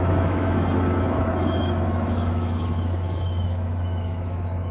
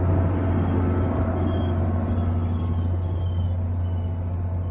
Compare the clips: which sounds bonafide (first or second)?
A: second